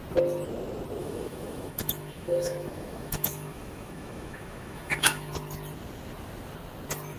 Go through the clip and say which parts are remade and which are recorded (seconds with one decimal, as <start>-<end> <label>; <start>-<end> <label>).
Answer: 0.0-1.0 recorded; 1.0-5.3 remade; 5.3-7.2 recorded